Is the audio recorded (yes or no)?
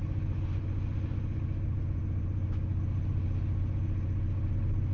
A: yes